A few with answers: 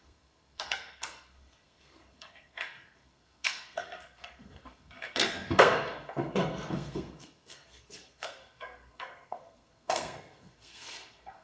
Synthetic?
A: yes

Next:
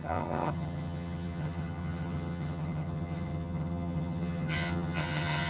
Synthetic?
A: yes